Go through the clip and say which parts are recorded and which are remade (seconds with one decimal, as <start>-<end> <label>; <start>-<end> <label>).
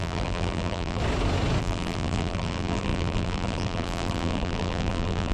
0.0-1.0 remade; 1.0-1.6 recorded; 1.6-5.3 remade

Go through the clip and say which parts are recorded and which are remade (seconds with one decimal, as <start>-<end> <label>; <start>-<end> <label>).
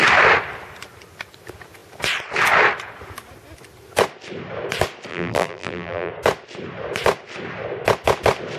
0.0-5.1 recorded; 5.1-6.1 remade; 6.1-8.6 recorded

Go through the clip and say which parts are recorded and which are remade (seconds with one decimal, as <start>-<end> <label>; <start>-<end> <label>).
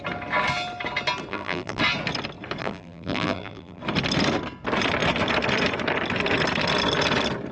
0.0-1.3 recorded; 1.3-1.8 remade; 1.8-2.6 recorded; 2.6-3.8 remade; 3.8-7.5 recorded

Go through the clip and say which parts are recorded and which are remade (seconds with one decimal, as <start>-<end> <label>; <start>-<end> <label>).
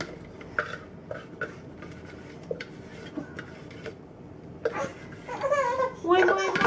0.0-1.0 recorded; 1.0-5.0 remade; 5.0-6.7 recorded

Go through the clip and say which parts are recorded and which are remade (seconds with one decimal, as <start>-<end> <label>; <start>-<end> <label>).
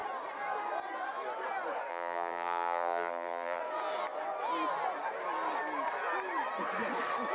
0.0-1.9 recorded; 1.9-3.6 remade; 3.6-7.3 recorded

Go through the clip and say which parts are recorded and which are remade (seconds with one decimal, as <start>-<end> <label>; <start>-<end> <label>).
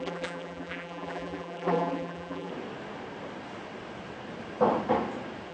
0.0-2.5 remade; 2.5-5.5 recorded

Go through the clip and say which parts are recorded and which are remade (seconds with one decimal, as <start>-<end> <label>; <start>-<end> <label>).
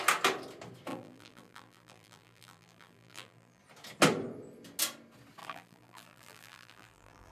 0.0-0.9 recorded; 0.9-3.6 remade; 3.6-5.4 recorded; 5.4-7.3 remade